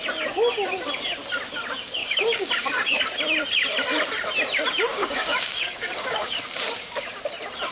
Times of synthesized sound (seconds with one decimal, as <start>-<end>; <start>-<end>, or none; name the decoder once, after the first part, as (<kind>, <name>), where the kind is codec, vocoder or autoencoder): 2.0-2.5 (codec, DAC); 4.9-6.4